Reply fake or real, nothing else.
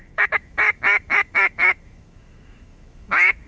fake